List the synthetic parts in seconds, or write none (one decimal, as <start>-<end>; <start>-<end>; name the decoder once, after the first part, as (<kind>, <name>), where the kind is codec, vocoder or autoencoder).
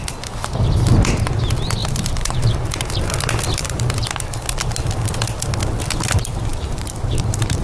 1.8-2.9 (vocoder, BigVGAN v2); 3.6-4.6; 6.5-7.6